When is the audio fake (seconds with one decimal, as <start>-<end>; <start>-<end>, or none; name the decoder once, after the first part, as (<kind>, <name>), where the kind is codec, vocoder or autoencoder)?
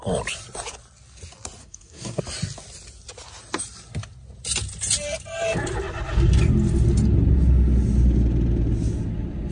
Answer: 1.6-2.2 (codec, SNAC)